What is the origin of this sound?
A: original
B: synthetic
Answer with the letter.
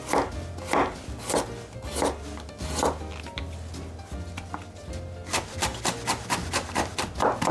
A